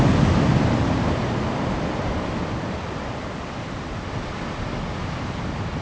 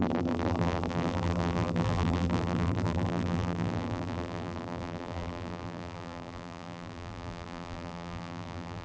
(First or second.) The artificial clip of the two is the second